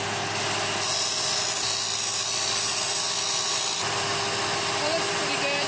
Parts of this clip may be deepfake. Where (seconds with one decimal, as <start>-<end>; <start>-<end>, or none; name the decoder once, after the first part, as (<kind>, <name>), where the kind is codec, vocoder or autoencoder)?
none